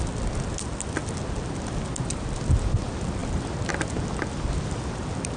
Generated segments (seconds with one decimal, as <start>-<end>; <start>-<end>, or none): none